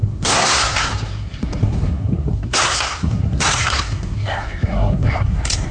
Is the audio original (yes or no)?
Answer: no